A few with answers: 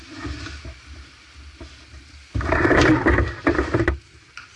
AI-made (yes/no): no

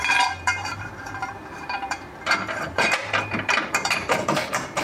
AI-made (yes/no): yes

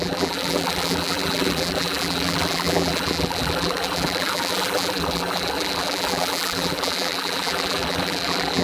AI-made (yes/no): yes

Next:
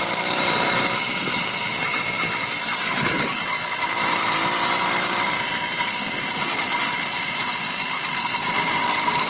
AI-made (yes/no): yes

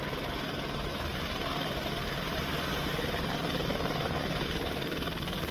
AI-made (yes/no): yes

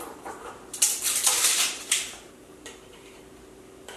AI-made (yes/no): yes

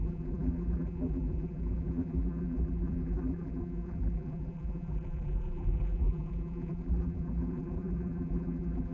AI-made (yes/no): yes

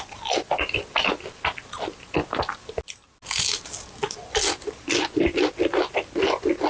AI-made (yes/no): no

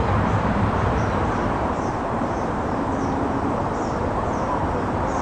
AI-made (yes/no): yes